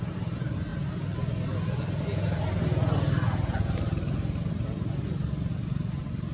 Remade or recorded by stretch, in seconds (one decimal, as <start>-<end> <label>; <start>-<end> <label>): 0.0-6.3 recorded